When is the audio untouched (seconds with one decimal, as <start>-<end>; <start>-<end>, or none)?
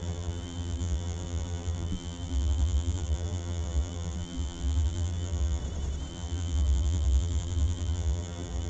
5.6-6.1